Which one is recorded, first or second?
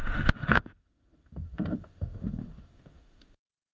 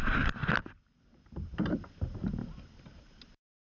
second